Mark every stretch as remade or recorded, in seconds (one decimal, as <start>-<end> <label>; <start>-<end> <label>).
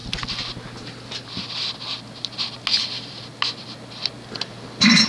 0.0-5.1 recorded